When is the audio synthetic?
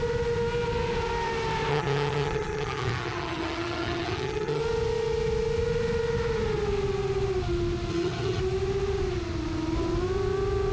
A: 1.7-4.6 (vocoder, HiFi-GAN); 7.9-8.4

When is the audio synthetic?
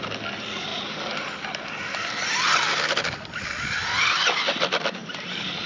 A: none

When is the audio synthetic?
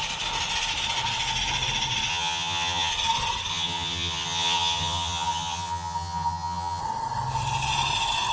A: 2.1-2.9 (vocoder, HiFi-GAN); 3.5-6.8